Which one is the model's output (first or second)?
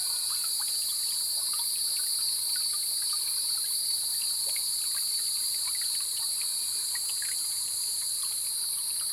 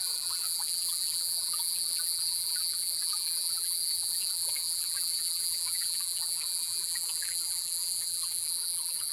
second